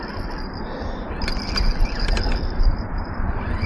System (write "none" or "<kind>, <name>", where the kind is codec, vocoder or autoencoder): none